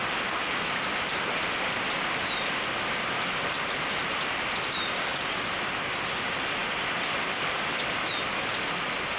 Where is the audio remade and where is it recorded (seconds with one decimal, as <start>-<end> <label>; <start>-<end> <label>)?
0.0-9.2 recorded

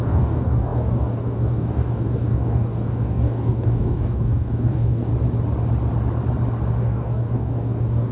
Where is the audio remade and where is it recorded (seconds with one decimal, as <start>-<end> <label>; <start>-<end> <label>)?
0.0-5.1 remade; 5.1-6.8 recorded; 6.8-8.1 remade

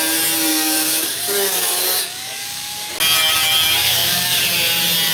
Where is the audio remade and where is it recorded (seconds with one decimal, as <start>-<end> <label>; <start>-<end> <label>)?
0.0-0.5 recorded; 0.5-2.9 remade; 2.9-3.8 recorded; 3.8-4.4 remade; 4.4-5.1 recorded

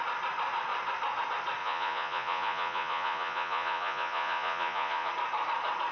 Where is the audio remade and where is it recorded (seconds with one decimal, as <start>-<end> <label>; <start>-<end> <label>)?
0.0-1.6 recorded; 1.6-5.1 remade; 5.1-5.9 recorded

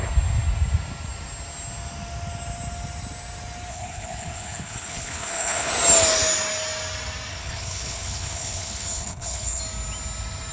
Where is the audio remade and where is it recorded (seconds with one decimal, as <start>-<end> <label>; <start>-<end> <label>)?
0.0-3.7 recorded; 3.7-5.7 remade; 5.7-7.3 recorded; 7.3-9.6 remade; 9.6-10.5 recorded

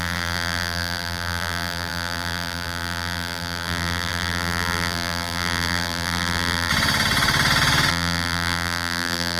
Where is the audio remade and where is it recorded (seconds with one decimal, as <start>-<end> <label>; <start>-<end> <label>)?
0.0-6.7 remade; 6.7-7.9 recorded; 7.9-9.4 remade